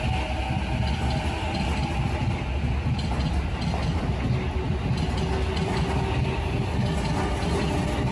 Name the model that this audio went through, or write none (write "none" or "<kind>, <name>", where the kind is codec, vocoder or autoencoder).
none